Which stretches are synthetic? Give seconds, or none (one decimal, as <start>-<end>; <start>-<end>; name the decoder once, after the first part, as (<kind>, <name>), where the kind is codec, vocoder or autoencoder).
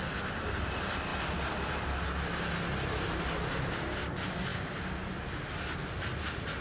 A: none